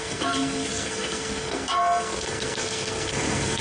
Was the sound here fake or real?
fake